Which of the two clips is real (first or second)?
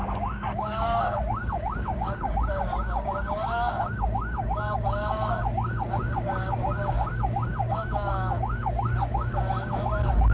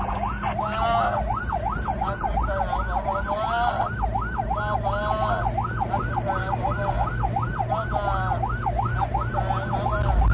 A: second